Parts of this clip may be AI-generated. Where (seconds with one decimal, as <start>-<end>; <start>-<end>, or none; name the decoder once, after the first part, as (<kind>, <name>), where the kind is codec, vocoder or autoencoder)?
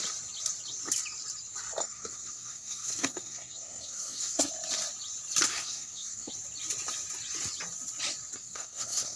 1.8-4.5 (codec, SNAC); 5.5-6.3; 8.4-9.2